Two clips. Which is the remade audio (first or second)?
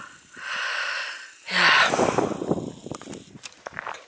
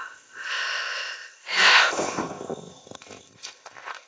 second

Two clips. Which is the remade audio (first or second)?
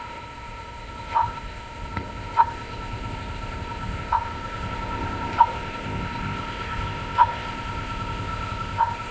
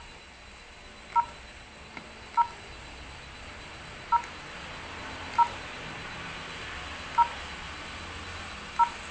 first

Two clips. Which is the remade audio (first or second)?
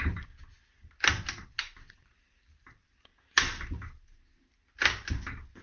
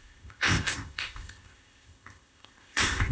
second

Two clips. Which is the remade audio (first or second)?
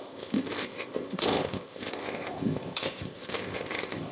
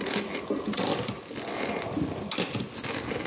first